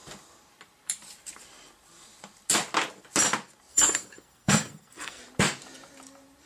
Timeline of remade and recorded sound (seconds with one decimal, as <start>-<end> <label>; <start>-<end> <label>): 0.0-3.7 recorded; 3.7-5.2 remade; 5.2-6.5 recorded